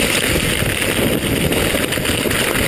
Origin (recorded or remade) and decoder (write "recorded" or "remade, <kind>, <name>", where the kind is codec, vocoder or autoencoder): recorded